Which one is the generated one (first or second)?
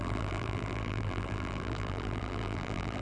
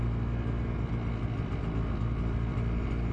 first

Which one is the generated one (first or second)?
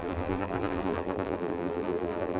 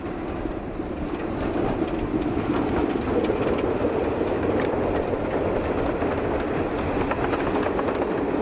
first